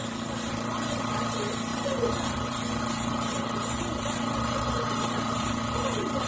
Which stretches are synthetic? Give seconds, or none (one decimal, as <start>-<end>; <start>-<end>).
1.7-5.5